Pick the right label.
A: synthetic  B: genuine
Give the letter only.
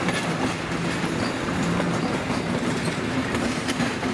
A